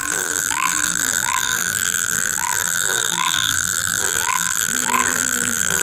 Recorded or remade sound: remade